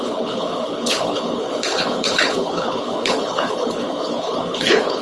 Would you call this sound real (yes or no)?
no